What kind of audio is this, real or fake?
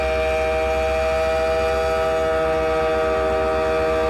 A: real